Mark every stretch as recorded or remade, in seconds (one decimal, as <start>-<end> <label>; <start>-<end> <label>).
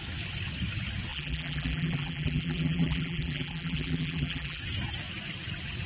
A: 0.0-1.1 recorded; 1.1-4.6 remade; 4.6-5.9 recorded